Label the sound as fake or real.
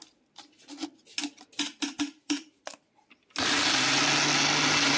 real